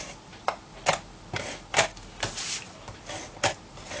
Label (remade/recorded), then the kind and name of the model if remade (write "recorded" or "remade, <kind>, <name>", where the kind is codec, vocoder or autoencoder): recorded